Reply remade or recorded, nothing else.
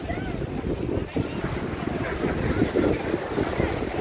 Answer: recorded